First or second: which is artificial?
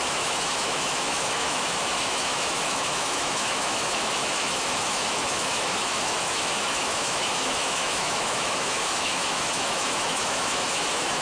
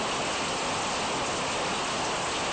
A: first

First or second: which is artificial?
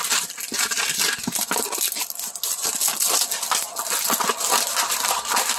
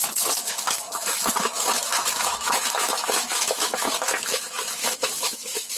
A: second